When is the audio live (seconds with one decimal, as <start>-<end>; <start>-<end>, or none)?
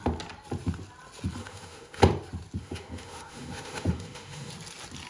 0.0-1.4; 2.0-2.6; 4.5-5.1